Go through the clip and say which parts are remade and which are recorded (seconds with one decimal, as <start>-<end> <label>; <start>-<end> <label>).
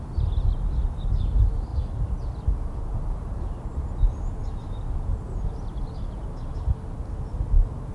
0.0-7.9 recorded